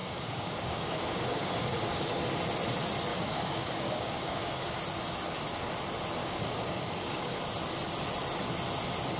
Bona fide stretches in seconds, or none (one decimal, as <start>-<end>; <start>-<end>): 2.2-3.1; 4.8-6.2; 7.4-9.2